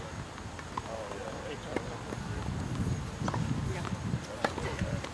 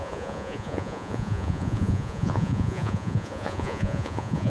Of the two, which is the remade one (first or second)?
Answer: second